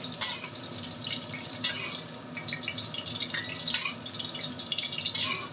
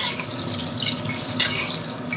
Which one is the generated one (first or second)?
second